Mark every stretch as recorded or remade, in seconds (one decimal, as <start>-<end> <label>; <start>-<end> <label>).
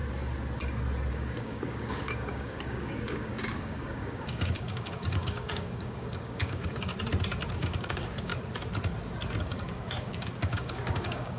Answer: 0.0-1.1 recorded; 1.1-6.9 remade; 6.9-7.5 recorded; 7.5-8.3 remade; 8.3-9.4 recorded; 9.4-11.4 remade